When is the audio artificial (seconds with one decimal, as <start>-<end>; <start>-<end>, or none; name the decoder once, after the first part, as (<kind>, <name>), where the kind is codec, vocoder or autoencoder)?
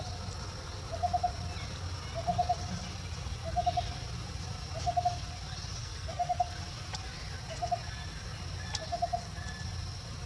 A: 5.8-6.5 (codec, SNAC)